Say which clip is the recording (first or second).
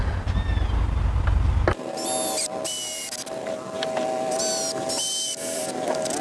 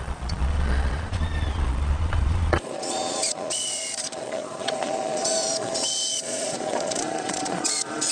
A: first